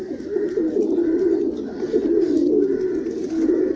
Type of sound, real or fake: real